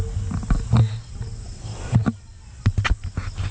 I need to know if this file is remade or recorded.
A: recorded